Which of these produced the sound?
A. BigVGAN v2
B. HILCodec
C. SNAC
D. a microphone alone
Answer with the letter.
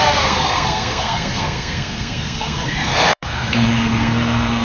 C